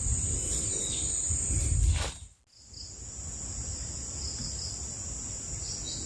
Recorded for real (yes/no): yes